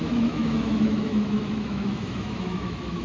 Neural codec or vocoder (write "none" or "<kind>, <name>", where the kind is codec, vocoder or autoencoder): autoencoder, DAC-VAE